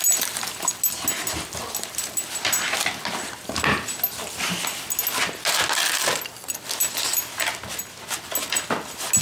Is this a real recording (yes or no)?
yes